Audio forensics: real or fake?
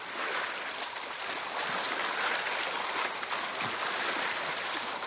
real